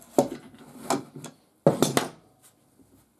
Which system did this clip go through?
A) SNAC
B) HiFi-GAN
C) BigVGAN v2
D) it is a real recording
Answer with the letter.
D